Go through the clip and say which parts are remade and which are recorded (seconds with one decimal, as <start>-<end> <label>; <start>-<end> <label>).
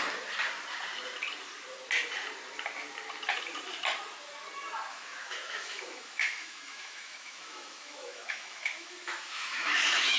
0.0-4.9 recorded; 4.9-10.2 remade